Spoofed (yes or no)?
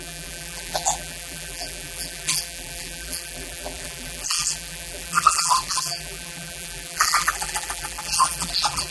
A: yes